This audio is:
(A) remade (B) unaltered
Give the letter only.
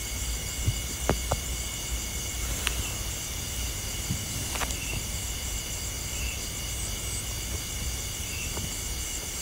B